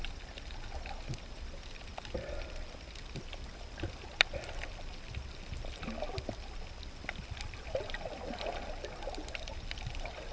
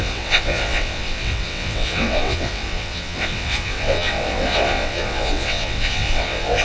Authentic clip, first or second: first